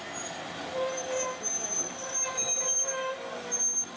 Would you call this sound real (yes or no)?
yes